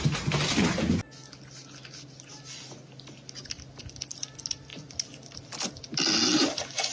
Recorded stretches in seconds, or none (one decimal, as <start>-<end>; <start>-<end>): 0.0-6.9